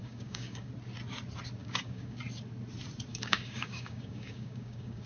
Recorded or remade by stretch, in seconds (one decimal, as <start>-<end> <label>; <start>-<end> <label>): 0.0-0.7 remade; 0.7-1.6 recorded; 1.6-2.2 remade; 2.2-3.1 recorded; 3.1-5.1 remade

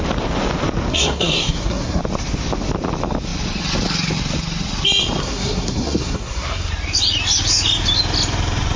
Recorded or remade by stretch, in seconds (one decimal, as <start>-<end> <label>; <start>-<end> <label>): 0.0-0.9 recorded; 0.9-2.0 remade; 2.0-5.2 recorded; 5.2-6.7 remade; 6.7-8.8 recorded

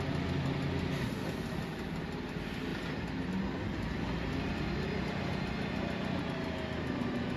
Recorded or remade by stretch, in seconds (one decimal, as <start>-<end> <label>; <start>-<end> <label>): 0.0-7.4 recorded